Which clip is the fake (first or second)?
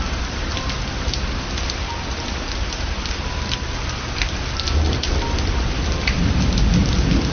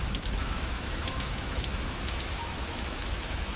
second